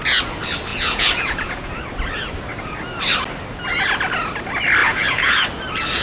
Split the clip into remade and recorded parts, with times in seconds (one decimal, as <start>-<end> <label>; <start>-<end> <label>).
0.0-0.7 recorded; 0.7-1.7 remade; 1.7-4.8 recorded; 4.8-5.4 remade; 5.4-6.0 recorded